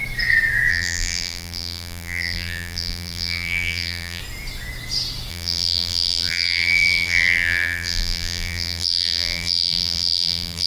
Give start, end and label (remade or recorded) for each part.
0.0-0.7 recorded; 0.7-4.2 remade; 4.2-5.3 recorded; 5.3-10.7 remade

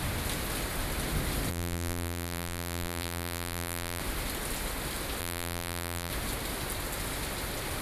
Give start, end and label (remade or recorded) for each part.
0.0-1.5 recorded; 1.5-4.0 remade; 4.0-5.2 recorded; 5.2-6.1 remade; 6.1-7.8 recorded

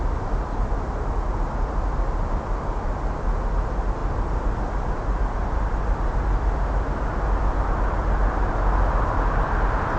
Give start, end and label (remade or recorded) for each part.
0.0-10.0 recorded

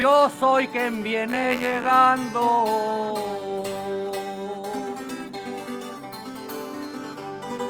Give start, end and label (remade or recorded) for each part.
0.0-1.3 recorded; 1.3-1.9 remade; 1.9-7.7 recorded

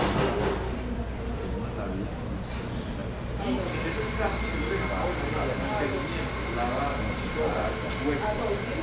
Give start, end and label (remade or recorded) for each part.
0.0-8.8 recorded

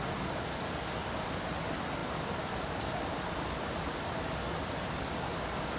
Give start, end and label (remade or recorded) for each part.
0.0-5.8 recorded